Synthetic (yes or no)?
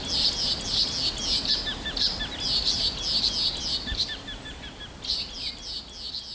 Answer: no